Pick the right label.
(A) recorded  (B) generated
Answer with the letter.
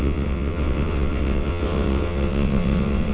B